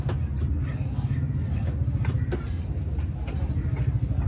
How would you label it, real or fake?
real